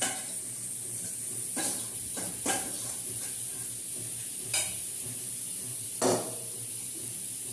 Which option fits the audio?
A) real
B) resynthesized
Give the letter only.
B